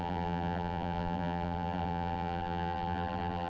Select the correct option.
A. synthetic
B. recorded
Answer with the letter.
A